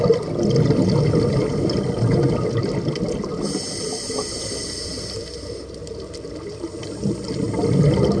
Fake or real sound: real